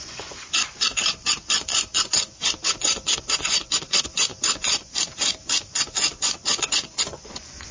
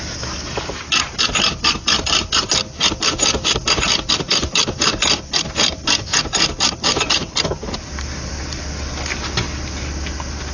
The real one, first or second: second